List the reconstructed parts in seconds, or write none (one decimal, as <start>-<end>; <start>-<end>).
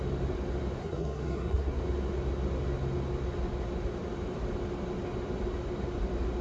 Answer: 0.8-1.8